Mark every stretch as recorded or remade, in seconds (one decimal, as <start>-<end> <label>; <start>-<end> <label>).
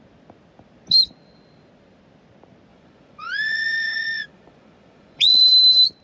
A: 0.0-2.7 recorded; 2.7-5.4 remade; 5.4-6.0 recorded